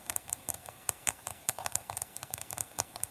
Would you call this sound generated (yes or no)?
yes